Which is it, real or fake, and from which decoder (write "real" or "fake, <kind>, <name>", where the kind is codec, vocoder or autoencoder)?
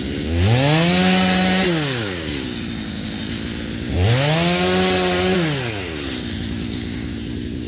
real